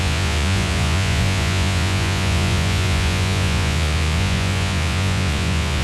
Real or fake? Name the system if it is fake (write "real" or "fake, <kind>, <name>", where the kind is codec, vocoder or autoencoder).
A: fake, vocoder, Vocos